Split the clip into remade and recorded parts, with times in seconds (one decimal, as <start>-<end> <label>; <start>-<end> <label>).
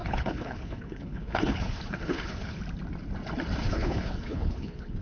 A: 0.0-2.6 remade; 2.6-3.6 recorded; 3.6-5.0 remade